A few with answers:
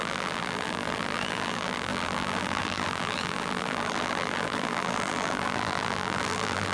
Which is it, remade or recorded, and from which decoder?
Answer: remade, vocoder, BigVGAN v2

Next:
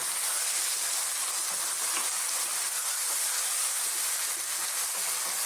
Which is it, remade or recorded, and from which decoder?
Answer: recorded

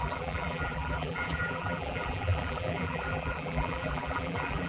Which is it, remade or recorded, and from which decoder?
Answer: remade, vocoder, BigVGAN v2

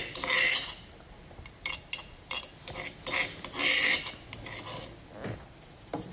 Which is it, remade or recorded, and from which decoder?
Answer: recorded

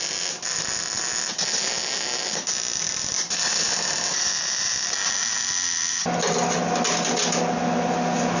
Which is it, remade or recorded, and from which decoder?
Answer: recorded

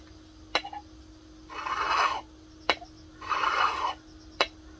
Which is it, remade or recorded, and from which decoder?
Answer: recorded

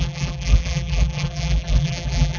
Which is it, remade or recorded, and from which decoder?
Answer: remade, vocoder, BigVGAN v2